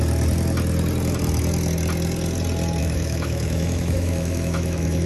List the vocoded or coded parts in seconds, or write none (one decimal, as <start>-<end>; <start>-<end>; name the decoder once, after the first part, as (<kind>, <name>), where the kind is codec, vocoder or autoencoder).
2.8-5.1 (autoencoder, DAC-VAE)